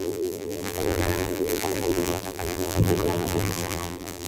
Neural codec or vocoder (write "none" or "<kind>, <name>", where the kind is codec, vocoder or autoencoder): vocoder, BigVGAN v2